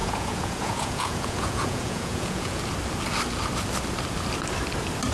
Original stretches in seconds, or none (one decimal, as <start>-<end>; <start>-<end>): 2.6-5.1

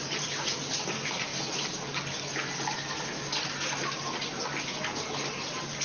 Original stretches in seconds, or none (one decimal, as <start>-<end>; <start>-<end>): 0.0-5.8

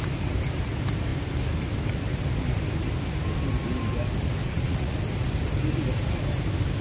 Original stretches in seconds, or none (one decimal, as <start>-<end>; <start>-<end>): 0.0-4.4; 5.0-6.8

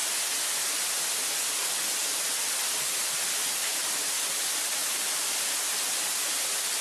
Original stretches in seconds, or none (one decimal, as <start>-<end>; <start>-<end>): 0.0-4.8; 5.9-6.8

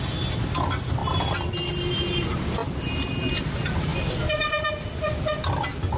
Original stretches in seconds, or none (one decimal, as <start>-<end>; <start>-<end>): 0.0-6.0

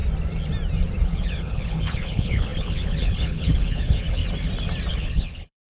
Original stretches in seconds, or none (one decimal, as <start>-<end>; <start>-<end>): 0.0-1.1; 4.2-4.9

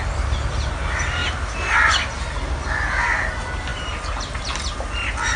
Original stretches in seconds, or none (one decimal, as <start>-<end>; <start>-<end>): 0.0-5.4

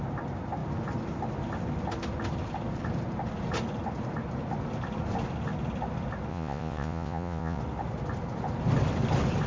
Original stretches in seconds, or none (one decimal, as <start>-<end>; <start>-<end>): 0.0-6.3; 7.6-9.5